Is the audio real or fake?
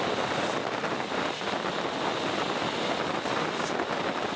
real